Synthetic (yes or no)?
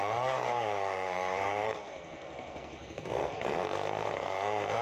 yes